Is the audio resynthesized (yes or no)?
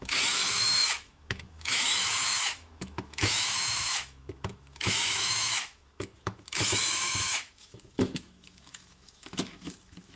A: yes